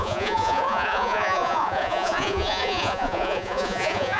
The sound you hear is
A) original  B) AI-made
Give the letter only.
B